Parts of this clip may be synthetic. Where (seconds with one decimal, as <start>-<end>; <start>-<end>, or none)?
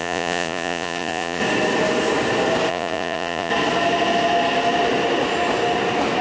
0.0-1.4; 2.7-3.5